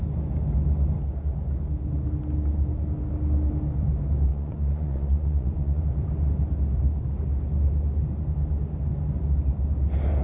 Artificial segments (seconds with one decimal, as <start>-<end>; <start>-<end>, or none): 4.3-5.8